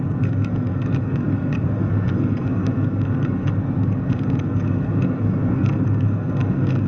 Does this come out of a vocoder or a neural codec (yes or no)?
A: yes